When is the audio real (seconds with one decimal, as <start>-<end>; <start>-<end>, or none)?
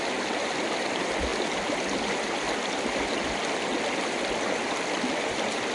0.0-5.7